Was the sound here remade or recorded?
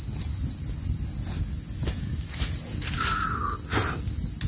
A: recorded